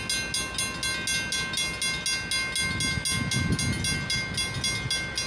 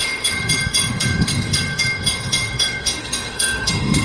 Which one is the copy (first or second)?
second